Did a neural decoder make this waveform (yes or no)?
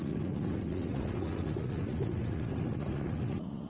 yes